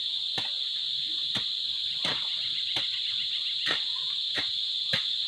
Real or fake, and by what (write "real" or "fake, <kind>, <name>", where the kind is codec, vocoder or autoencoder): real